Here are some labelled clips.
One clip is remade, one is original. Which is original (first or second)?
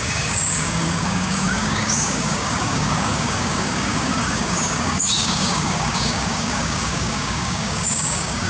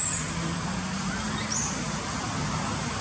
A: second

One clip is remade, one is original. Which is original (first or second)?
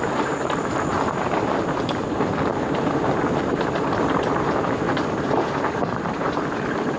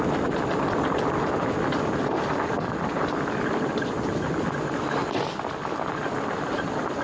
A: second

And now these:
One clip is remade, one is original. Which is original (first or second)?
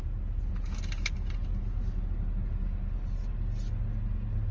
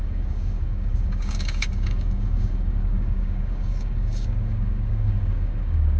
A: first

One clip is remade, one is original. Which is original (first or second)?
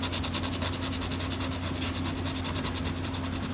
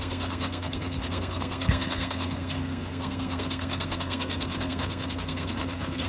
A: first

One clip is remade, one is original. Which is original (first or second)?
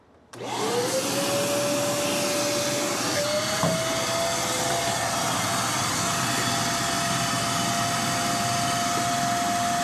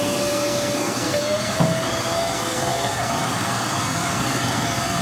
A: first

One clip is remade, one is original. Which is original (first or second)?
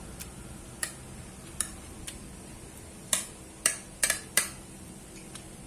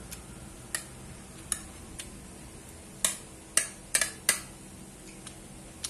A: second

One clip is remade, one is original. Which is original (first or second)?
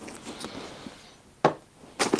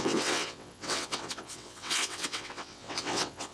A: first